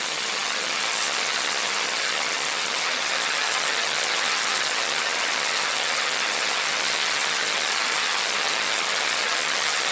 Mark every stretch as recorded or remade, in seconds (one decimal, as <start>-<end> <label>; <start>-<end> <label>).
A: 0.0-9.9 remade